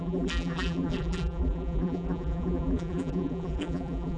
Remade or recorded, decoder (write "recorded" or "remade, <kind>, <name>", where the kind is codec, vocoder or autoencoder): remade, vocoder, BigVGAN v2